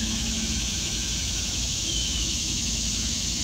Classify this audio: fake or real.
fake